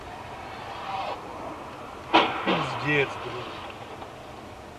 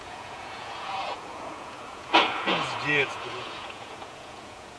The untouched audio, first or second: first